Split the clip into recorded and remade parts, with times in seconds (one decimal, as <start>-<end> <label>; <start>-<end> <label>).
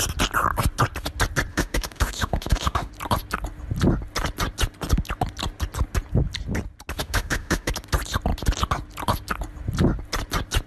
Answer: 0.0-1.5 recorded; 1.5-2.9 remade; 2.9-7.0 recorded; 7.0-7.7 remade; 7.7-10.7 recorded